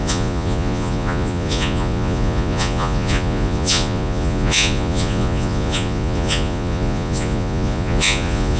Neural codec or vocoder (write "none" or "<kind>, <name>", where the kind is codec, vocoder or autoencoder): vocoder, Vocos